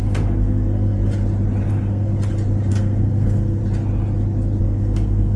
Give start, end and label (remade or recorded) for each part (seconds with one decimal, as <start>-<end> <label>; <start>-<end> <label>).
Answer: 0.0-1.0 remade; 1.0-1.7 recorded; 1.7-2.1 remade; 2.1-2.7 recorded; 2.7-3.6 remade; 3.6-4.6 recorded; 4.6-5.4 remade